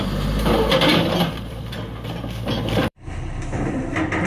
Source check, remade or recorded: remade